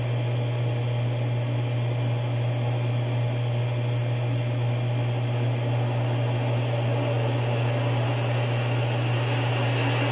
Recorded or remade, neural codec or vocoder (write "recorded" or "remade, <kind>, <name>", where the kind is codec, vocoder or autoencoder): recorded